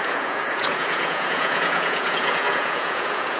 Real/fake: fake